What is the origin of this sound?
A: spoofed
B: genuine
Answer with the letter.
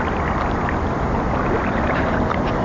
B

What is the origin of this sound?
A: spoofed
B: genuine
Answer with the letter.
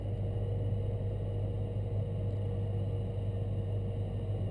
B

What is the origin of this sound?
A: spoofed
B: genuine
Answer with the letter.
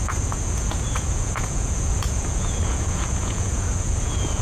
A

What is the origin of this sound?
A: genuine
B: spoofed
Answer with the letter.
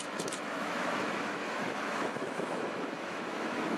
B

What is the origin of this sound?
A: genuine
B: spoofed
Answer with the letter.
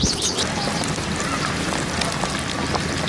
B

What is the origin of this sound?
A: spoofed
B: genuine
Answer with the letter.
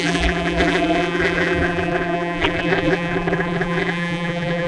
A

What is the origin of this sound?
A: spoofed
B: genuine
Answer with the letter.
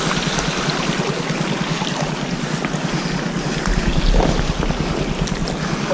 B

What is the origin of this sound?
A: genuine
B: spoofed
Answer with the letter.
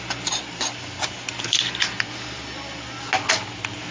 A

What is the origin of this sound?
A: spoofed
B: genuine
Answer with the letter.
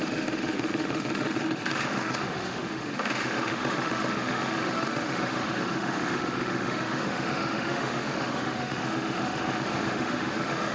A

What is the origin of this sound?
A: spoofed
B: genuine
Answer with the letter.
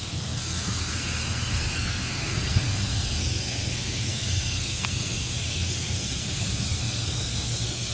A